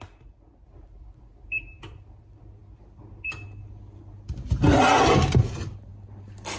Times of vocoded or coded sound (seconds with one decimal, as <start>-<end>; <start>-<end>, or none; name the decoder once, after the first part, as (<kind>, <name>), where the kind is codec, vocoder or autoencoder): none